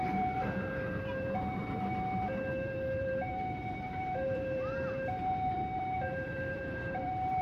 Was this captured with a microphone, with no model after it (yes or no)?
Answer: no